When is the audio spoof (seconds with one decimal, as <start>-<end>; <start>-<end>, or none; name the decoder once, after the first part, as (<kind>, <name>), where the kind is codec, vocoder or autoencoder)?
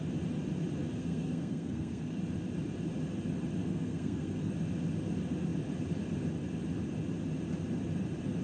1.0-2.2 (codec, SNAC); 3.6-4.5